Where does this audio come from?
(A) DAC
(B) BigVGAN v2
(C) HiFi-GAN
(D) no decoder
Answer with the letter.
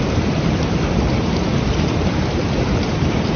B